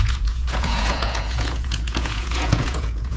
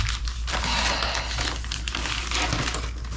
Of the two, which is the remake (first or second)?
first